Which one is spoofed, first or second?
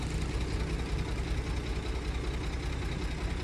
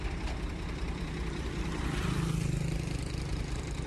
second